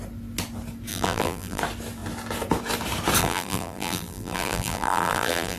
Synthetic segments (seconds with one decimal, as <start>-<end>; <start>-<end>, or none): 0.9-1.6; 3.2-5.6